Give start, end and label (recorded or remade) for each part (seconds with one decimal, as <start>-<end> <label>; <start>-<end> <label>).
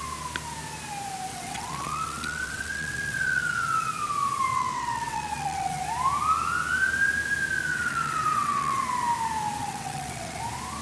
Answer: 0.0-1.3 recorded; 1.3-3.9 remade; 3.9-4.5 recorded; 4.5-5.8 remade; 5.8-7.7 recorded; 7.7-8.8 remade; 8.8-9.6 recorded; 9.6-10.4 remade; 10.4-10.8 recorded